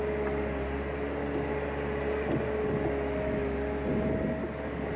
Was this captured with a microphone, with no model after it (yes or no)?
yes